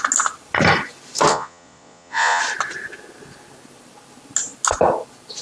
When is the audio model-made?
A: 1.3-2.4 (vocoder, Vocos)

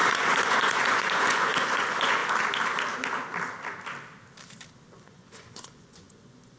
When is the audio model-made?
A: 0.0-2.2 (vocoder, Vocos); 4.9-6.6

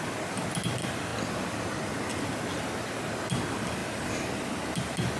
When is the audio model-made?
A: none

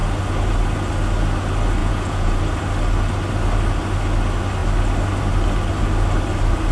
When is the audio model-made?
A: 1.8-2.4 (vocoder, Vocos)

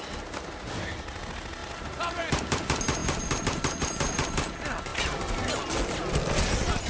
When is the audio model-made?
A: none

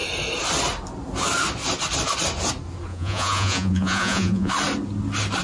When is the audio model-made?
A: 2.9-4.5 (vocoder, Vocos)

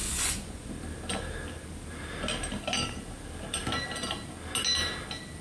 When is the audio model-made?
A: 0.0-0.7 (vocoder, Vocos)